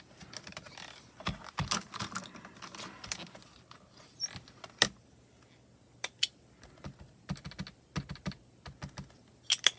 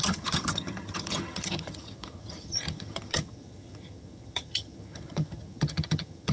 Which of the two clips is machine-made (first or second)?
second